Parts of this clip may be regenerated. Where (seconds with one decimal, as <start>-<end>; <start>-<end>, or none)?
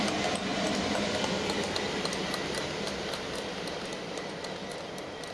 none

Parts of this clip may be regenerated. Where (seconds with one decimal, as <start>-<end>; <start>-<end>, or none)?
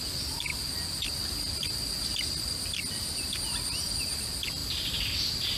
none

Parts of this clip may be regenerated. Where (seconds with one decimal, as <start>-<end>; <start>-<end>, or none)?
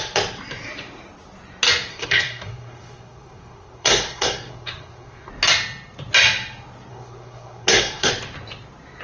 1.9-5.3; 6.9-8.1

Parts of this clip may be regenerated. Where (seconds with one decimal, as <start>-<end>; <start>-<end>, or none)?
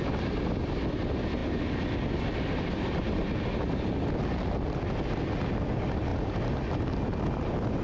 none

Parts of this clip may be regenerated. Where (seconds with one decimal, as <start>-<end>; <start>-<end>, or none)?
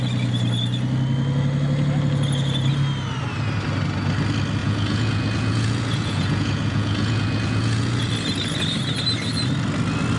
4.6-8.1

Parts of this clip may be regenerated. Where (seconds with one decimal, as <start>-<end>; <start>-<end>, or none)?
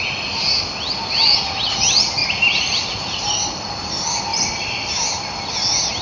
2.2-3.3; 4.3-5.2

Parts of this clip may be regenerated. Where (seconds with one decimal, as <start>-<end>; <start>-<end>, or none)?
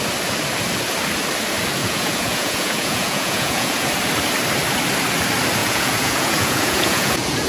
1.8-3.9; 5.6-7.5